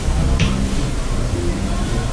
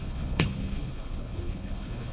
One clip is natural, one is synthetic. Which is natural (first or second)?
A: first